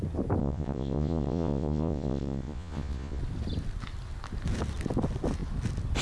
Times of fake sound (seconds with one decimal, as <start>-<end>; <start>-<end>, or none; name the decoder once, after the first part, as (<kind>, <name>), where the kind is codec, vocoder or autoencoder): 0.4-3.2 (vocoder, Vocos)

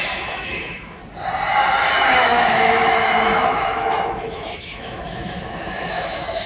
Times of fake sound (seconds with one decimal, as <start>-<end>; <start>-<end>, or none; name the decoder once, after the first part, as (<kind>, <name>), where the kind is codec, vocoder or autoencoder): 0.0-1.0 (autoencoder, DAC-VAE); 1.9-6.5

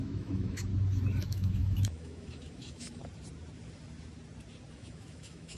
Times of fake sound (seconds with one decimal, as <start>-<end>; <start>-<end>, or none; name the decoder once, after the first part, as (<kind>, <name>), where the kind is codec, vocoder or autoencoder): 0.0-0.7 (autoencoder, DAC-VAE); 1.2-3.0; 4.7-5.6

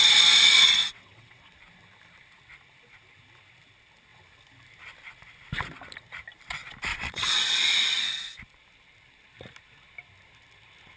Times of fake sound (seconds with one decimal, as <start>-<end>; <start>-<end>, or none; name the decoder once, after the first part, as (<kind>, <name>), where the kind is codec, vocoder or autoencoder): 0.8-1.4 (vocoder, WaveNeXt); 6.9-7.4

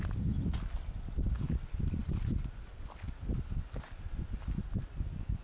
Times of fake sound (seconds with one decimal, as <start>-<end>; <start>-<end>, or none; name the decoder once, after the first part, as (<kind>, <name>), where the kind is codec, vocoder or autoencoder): none

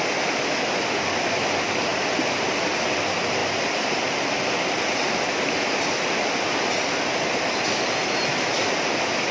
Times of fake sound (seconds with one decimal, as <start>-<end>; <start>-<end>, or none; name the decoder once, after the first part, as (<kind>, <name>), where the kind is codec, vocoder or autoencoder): 1.9-2.9 (vocoder, BigVGAN v2); 3.4-5.1

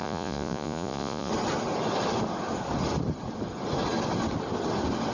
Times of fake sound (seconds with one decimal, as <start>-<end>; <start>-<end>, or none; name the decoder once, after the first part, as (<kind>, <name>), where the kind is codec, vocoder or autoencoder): 0.0-1.3 (vocoder, Vocos)